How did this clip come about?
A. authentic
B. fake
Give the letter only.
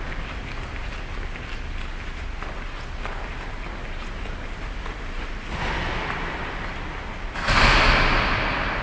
A